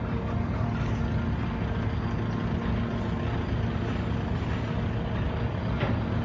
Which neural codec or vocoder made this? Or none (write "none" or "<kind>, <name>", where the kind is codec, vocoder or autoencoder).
none